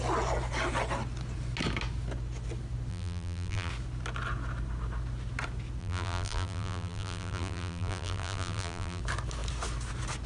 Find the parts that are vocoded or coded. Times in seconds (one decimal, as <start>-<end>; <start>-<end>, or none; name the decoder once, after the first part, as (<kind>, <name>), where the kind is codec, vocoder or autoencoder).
2.9-3.7 (vocoder, BigVGAN v2); 5.8-9.0